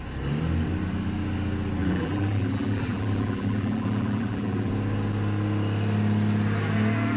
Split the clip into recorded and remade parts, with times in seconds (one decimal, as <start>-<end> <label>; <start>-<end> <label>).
0.0-1.8 recorded; 1.8-4.7 remade; 4.7-7.2 recorded